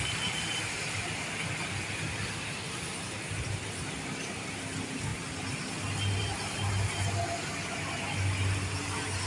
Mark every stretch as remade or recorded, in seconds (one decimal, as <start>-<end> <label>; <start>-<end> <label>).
0.0-9.3 recorded